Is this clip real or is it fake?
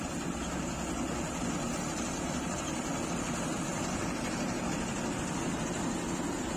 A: real